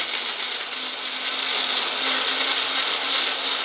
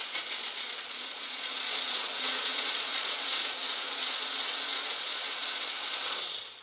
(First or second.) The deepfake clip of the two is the second